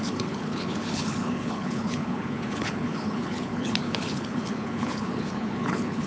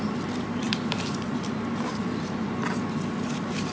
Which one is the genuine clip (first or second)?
second